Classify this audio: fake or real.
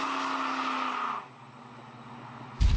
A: real